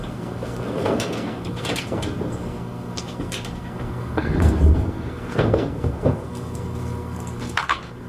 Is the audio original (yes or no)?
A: no